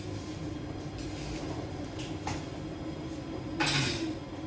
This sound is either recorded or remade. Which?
recorded